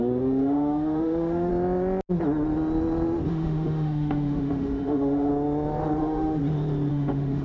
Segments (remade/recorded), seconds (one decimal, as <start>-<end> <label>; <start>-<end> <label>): 0.0-1.5 remade; 1.5-3.3 recorded; 3.3-5.3 remade; 5.3-6.0 recorded; 6.0-6.4 remade; 6.4-6.9 recorded; 6.9-7.4 remade